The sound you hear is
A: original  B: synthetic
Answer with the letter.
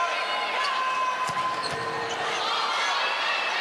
A